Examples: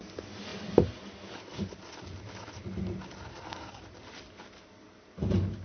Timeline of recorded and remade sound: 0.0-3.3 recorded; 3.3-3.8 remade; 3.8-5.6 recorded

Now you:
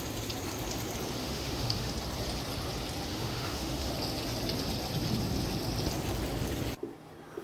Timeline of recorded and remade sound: 0.0-1.2 recorded; 1.2-1.9 remade; 1.9-3.1 recorded; 3.1-3.9 remade; 3.9-7.4 recorded